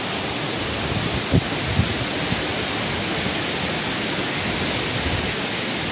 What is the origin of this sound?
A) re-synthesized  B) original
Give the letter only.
B